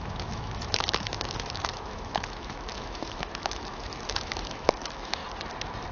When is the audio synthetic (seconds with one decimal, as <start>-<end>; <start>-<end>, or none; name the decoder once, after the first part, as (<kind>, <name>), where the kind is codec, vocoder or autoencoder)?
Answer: 0.0-5.2 (autoencoder, DAC-VAE)

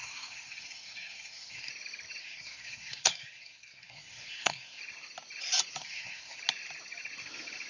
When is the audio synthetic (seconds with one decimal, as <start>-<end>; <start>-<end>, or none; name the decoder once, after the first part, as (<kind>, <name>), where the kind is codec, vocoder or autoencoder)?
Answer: 0.0-1.7 (codec, SNAC); 2.2-4.8; 5.8-6.4

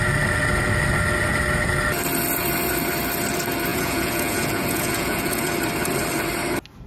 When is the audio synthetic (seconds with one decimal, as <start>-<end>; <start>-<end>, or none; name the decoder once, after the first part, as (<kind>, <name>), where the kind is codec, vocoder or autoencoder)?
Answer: 3.7-5.5 (vocoder, Vocos)

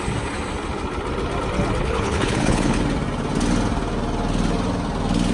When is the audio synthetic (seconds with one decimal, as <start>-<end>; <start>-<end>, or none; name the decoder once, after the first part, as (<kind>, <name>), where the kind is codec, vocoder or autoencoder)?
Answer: 1.8-2.8 (codec, HILCodec)

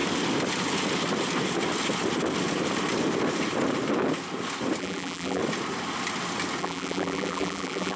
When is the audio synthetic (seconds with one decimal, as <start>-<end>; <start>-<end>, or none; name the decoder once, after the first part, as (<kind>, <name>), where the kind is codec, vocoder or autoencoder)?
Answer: 4.8-5.4 (vocoder, BigVGAN v2); 6.6-8.0

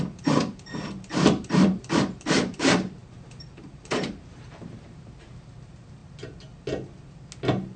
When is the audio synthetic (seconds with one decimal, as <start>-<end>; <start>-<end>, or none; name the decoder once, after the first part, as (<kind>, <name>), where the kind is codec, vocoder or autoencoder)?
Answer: 0.0-6.0 (vocoder, BigVGAN v2)

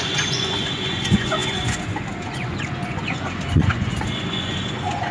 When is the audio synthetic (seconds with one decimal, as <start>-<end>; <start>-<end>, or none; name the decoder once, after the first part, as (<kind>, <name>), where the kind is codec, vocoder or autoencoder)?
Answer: 0.0-5.1 (vocoder, Vocos)